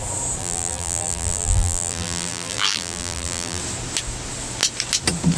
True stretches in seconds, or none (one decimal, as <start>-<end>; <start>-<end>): 0.0-0.4; 3.6-5.4